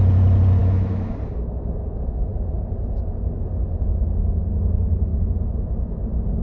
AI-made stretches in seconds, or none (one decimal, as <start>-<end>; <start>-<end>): 0.6-1.1